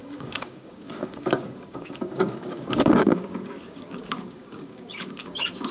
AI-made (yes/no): yes